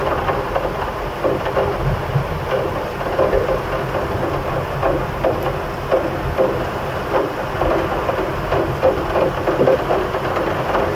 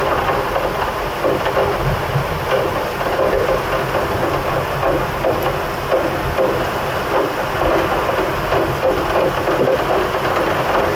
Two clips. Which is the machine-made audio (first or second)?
first